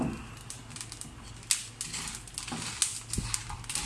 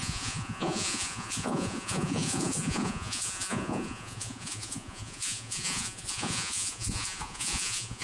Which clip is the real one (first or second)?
first